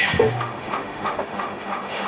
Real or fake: fake